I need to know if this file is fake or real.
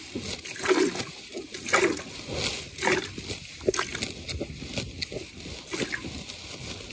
real